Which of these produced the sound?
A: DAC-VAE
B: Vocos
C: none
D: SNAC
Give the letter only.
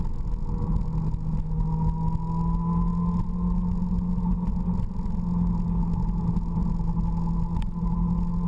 C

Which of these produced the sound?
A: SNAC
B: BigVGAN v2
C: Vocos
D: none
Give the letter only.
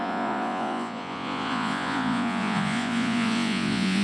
C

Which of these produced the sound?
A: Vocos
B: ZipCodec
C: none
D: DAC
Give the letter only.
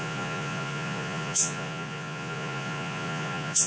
A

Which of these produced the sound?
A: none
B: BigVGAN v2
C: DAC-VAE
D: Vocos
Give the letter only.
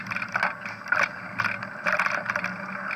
A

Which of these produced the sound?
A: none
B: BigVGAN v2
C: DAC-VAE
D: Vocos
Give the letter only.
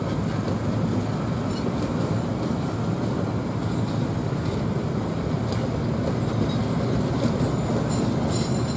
A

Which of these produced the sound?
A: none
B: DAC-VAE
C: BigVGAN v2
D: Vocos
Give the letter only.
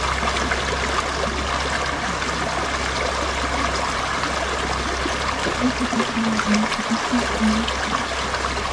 A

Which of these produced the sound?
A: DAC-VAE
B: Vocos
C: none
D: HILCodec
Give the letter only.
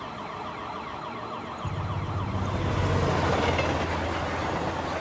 C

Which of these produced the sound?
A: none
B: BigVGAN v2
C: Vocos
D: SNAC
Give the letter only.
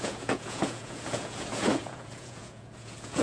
C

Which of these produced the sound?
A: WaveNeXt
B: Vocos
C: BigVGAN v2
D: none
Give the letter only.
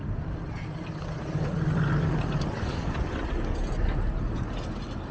D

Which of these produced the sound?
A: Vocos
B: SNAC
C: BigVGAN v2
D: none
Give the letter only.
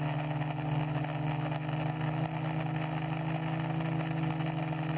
D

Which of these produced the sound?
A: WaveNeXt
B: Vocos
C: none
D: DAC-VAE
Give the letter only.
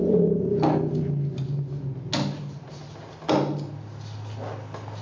C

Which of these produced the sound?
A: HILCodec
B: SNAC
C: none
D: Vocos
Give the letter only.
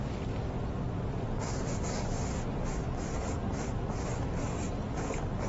C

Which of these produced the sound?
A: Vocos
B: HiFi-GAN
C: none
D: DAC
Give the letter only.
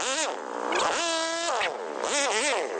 C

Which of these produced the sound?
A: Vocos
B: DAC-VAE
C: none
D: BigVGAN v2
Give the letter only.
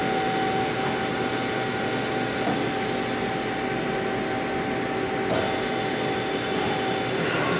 C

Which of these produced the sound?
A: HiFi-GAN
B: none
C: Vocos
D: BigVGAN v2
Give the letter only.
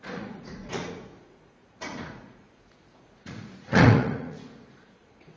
C